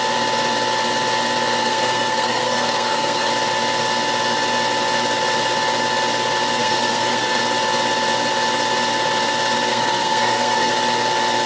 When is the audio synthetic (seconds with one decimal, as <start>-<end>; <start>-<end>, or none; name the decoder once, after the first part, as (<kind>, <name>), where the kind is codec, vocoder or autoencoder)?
1.6-3.3 (codec, SNAC); 6.6-7.4; 9.7-10.7

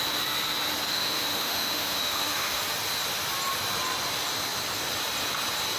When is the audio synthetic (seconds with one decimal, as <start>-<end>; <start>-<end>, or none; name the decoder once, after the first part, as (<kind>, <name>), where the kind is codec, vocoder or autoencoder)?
0.9-2.6 (autoencoder, DAC-VAE)

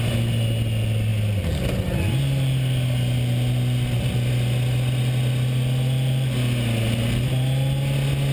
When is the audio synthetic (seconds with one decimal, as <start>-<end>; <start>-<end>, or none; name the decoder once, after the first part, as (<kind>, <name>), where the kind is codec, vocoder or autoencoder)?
none

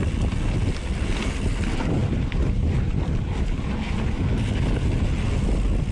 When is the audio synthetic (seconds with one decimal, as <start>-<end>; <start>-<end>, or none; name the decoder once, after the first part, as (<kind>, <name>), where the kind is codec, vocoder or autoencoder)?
none

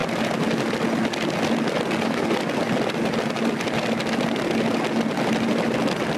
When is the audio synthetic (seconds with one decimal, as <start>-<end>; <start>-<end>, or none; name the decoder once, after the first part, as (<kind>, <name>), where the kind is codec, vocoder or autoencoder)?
none

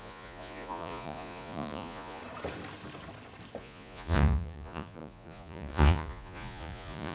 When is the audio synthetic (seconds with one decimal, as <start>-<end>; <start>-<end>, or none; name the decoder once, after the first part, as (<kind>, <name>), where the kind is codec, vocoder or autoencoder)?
0.0-2.2 (vocoder, Vocos); 3.6-7.1